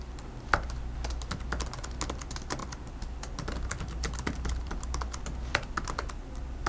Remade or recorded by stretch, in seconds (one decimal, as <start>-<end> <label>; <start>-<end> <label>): 0.0-6.7 recorded